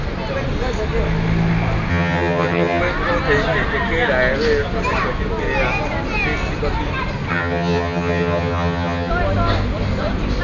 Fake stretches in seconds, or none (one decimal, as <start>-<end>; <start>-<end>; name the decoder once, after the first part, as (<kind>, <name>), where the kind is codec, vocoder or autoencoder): 1.9-2.8 (vocoder, HiFi-GAN); 7.3-9.1